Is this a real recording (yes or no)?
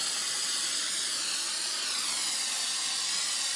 yes